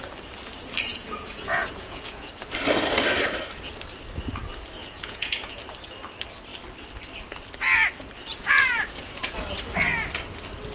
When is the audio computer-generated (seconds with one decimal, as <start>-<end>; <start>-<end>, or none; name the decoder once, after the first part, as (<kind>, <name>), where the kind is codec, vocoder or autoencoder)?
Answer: 0.9-2.3 (vocoder, Vocos); 4.8-5.5; 8.3-9.4